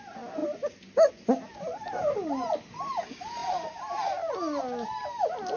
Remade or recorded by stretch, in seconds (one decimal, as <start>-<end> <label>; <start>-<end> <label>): 0.0-5.6 recorded

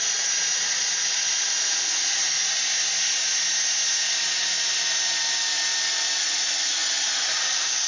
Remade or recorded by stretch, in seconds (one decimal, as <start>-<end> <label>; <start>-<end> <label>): 0.0-2.4 remade; 2.4-6.2 recorded; 6.2-7.9 remade

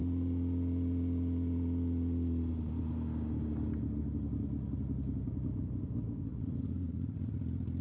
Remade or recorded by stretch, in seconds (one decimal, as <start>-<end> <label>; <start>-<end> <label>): 0.0-6.3 recorded; 6.3-7.3 remade; 7.3-7.8 recorded

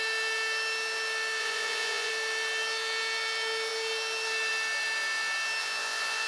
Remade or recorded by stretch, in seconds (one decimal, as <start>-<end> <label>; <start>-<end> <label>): 0.0-1.4 recorded; 1.4-2.1 remade; 2.1-5.6 recorded; 5.6-6.3 remade

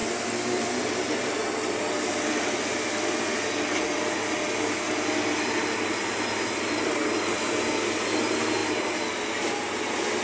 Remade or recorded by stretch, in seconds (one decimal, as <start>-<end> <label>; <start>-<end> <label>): 0.0-10.2 recorded

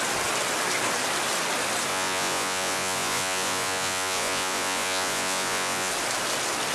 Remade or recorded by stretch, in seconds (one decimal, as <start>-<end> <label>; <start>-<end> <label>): 0.0-1.9 recorded; 1.9-5.9 remade; 5.9-6.7 recorded